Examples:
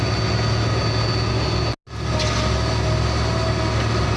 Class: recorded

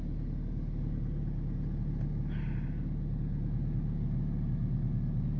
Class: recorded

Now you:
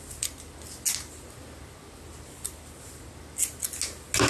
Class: recorded